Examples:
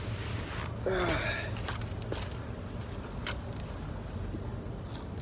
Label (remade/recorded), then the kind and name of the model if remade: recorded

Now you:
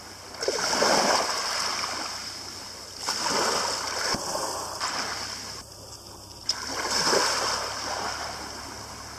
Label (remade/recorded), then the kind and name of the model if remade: recorded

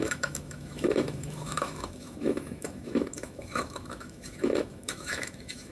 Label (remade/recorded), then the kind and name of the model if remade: remade, autoencoder, DAC-VAE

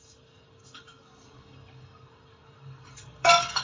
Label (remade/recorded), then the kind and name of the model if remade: remade, codec, DAC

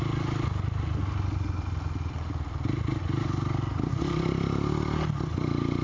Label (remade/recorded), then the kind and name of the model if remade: recorded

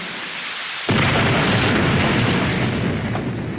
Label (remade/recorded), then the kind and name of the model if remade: recorded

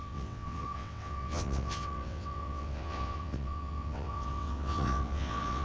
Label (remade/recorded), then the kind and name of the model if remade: remade, vocoder, WaveNeXt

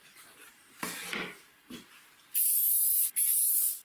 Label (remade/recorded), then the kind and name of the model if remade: remade, vocoder, BigVGAN v2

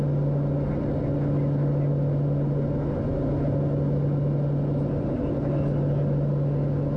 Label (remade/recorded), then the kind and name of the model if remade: recorded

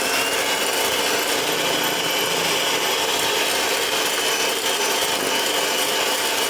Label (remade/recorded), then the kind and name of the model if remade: recorded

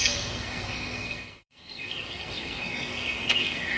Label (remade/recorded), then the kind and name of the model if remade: remade, codec, SNAC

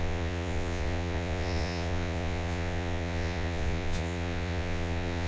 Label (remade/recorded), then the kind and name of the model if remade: remade, vocoder, Vocos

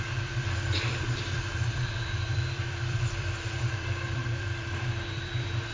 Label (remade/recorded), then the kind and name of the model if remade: remade, vocoder, BigVGAN v2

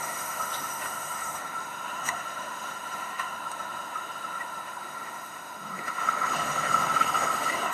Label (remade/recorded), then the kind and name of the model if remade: remade, autoencoder, DAC-VAE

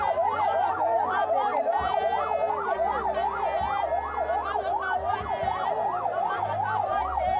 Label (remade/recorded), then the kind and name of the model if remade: recorded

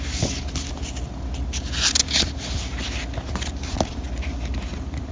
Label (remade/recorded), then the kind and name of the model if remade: recorded